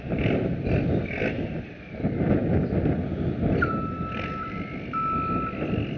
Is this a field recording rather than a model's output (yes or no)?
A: yes